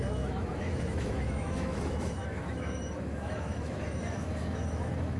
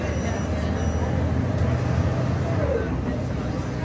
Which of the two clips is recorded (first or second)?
second